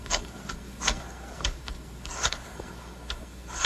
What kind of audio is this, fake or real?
fake